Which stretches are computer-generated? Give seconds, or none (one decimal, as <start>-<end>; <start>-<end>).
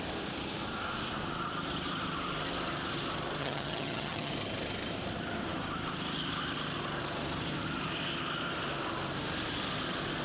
3.4-4.3